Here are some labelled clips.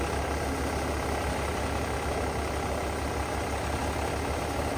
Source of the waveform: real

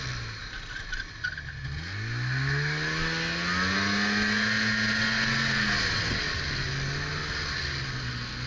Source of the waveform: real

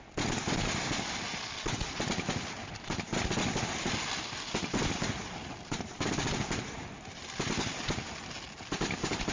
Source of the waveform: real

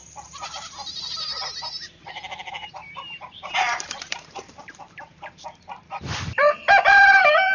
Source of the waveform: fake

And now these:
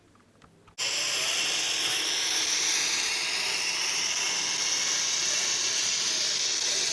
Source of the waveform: real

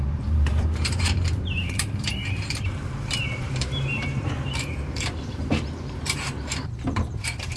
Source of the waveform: fake